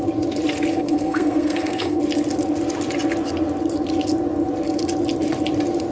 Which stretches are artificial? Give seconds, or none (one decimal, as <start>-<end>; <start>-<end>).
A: 0.7-2.0